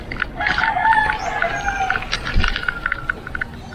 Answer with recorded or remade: recorded